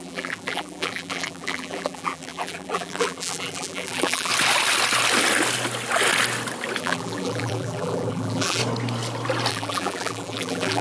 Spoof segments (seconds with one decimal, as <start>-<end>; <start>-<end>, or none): 0.0-4.3; 6.8-8.6; 9.5-10.8